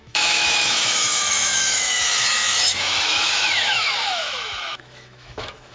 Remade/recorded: remade